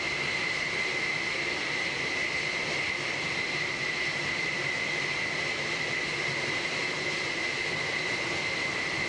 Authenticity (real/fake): real